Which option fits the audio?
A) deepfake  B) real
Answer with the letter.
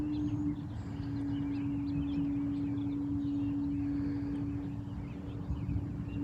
B